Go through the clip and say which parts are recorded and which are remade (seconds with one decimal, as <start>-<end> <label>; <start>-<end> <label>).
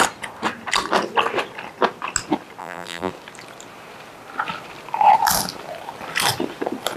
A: 0.0-2.6 recorded; 2.6-3.1 remade; 3.1-7.0 recorded